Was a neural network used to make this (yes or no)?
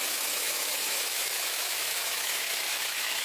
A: yes